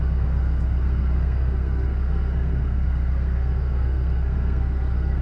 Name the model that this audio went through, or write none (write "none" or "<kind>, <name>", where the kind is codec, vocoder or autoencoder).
codec, SNAC